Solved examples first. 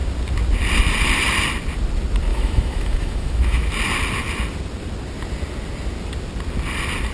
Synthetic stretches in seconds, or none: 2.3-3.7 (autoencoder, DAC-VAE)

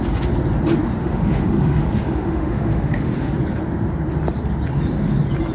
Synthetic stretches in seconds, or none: 1.0-3.3 (autoencoder, DAC-VAE)

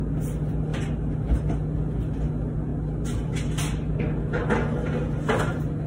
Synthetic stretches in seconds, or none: none

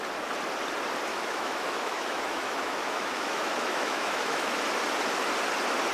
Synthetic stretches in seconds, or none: 1.1-4.6 (autoencoder, DAC-VAE)

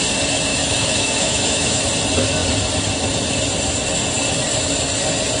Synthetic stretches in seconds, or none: 0.5-1.8 (autoencoder, DAC-VAE)

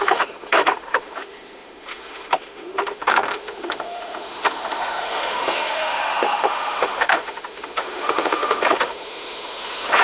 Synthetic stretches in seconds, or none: 0.0-10.0 (autoencoder, DAC-VAE)